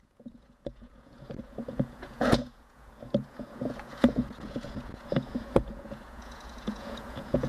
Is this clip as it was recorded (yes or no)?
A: no